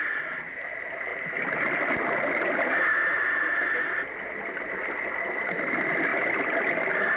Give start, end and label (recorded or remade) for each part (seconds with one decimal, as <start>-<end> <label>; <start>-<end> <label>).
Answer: 0.0-7.2 recorded